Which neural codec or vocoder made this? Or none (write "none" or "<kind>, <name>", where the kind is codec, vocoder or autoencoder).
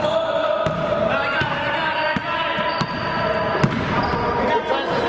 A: none